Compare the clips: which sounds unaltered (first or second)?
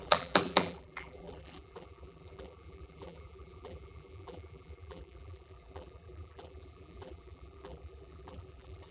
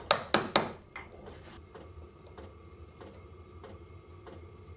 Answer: second